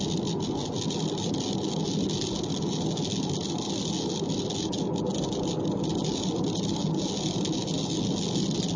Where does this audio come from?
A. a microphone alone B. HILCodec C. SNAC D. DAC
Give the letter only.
A